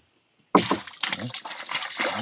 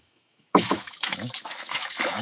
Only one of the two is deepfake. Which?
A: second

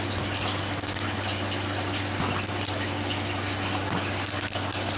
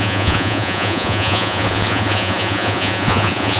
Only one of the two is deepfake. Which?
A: second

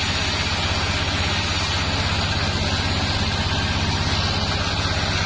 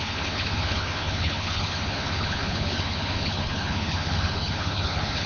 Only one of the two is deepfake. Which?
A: second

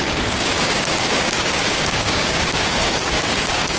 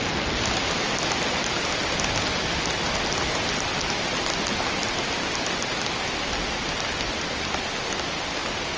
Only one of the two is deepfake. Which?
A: first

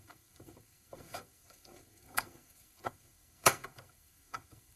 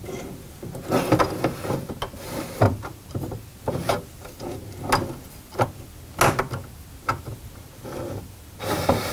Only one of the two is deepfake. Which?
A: first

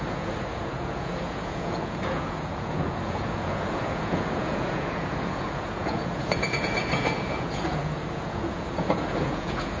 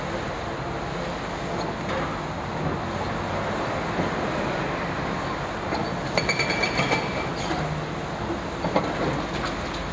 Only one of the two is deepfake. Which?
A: first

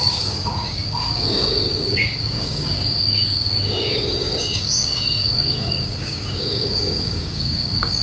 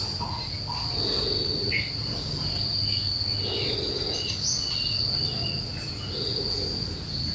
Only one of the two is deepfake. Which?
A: first